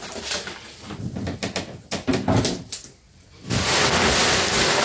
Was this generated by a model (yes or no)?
no